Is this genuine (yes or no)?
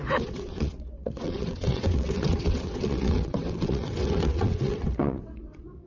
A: no